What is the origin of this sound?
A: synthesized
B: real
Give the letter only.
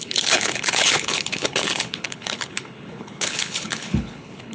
A